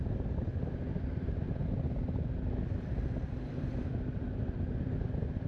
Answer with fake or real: real